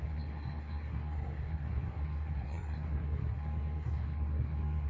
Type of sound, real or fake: fake